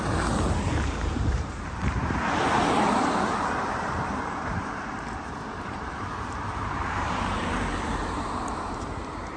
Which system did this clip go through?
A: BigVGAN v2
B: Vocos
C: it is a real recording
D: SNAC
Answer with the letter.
A